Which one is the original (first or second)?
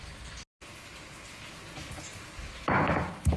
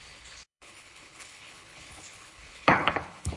first